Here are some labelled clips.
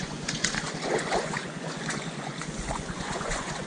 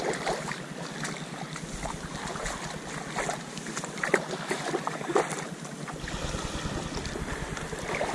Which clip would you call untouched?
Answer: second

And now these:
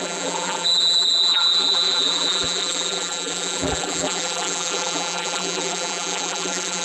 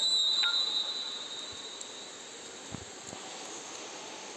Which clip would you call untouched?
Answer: second